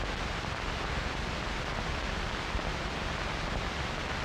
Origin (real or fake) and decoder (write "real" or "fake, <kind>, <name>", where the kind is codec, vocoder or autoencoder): real